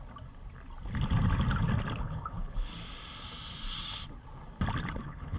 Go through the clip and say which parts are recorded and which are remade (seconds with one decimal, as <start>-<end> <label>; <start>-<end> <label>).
0.0-2.0 recorded; 2.0-2.7 remade; 2.7-5.0 recorded; 5.0-5.4 remade

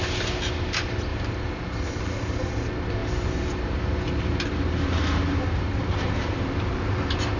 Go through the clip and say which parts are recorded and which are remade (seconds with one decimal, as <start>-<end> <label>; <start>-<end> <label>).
0.0-1.1 recorded; 1.1-2.4 remade; 2.4-3.0 recorded; 3.0-7.4 remade

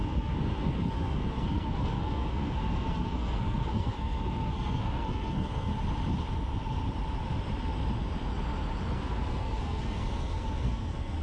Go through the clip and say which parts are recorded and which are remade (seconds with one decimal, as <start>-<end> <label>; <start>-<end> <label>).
0.0-5.7 remade; 5.7-8.9 recorded; 8.9-11.2 remade